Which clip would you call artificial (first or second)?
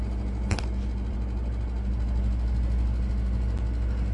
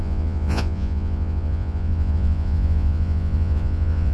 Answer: second